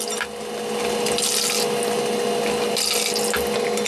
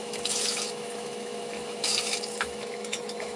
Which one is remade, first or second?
second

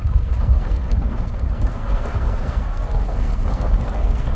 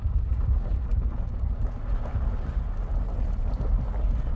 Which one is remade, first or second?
first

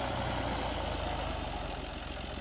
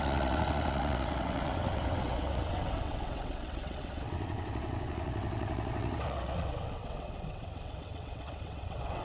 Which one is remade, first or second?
second